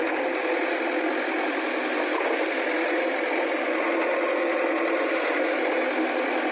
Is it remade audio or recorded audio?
recorded